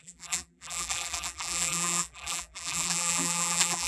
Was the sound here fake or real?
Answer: fake